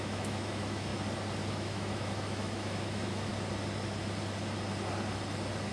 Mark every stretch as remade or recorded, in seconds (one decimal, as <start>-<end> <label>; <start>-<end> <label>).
0.0-0.9 remade; 0.9-1.5 recorded; 1.5-3.3 remade; 3.3-5.7 recorded